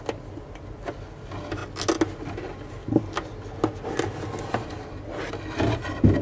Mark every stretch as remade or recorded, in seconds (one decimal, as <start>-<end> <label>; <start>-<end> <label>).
0.0-6.2 recorded